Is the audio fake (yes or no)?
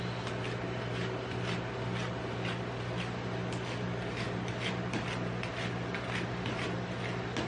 no